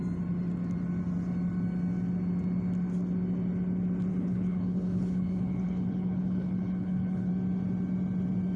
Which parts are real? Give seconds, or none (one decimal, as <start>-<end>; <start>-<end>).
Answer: 0.0-4.1; 7.3-8.6